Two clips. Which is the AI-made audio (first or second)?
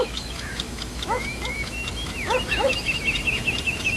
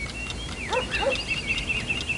first